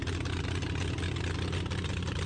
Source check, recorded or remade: recorded